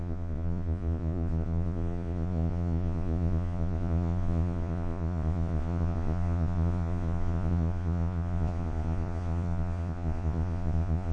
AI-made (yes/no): yes